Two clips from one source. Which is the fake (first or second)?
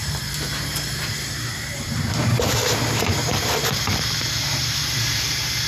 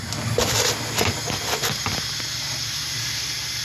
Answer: first